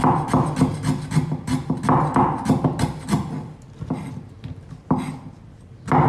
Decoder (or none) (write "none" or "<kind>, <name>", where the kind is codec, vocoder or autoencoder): none